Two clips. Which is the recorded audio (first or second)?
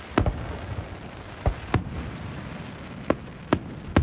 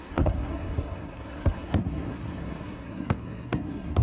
first